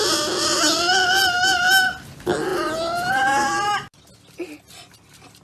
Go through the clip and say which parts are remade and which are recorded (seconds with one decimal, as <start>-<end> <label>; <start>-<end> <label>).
0.0-5.4 recorded